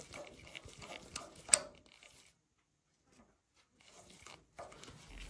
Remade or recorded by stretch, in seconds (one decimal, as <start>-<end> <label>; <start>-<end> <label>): 0.0-5.3 recorded